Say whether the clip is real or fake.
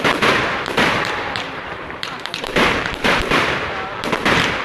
fake